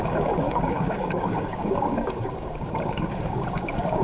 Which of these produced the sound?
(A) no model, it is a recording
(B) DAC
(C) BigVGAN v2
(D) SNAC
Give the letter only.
B